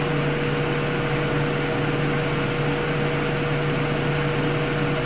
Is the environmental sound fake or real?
real